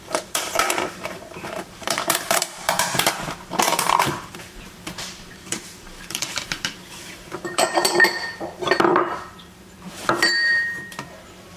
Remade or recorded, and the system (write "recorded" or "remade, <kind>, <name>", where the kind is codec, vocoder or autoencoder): remade, vocoder, BigVGAN v2